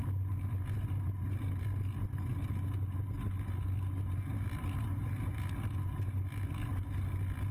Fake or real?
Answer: real